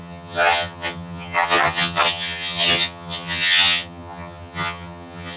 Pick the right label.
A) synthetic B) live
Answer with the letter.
A